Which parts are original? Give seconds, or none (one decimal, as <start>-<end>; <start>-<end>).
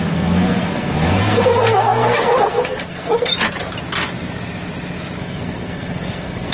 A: 3.3-5.2